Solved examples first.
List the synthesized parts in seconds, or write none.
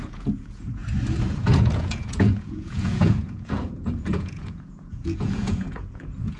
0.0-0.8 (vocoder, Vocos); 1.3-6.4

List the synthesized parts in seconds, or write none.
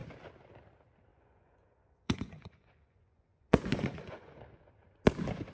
1.1-4.4 (vocoder, Vocos)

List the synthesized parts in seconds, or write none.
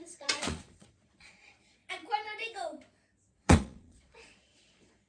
0.0-1.8 (vocoder, Vocos); 3.3-5.1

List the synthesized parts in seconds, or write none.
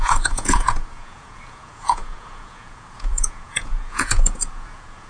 0.0-5.1 (vocoder, Vocos)